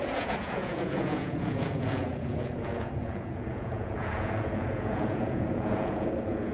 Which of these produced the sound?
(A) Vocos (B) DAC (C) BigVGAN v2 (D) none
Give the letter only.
A